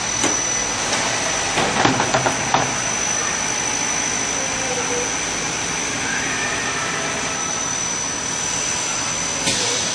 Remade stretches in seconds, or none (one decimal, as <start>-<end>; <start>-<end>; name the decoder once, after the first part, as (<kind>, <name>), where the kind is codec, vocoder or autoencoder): none